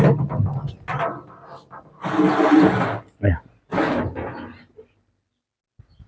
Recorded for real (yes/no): yes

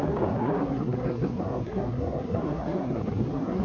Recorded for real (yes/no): no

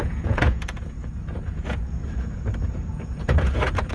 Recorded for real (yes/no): no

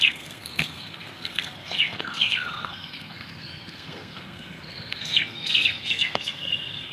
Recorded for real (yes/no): no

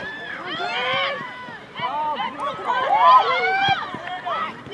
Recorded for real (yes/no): no